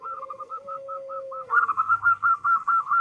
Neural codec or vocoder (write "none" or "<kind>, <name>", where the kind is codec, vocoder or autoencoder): codec, SNAC